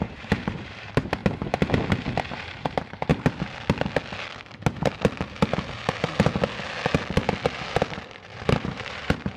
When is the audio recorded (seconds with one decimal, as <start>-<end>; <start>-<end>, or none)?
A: 1.2-2.2; 3.1-8.2